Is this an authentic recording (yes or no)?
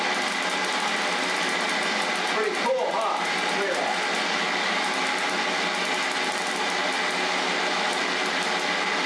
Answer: yes